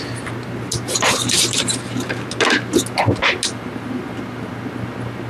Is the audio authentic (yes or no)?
yes